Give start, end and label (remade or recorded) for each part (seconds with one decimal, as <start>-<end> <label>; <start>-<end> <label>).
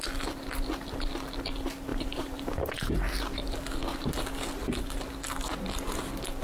0.0-1.9 recorded; 1.9-2.9 remade; 2.9-6.4 recorded